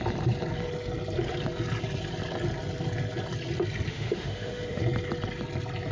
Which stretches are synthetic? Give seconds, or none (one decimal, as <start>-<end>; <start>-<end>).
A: 3.9-4.8